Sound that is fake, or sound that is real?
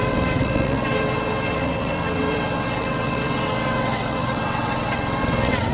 fake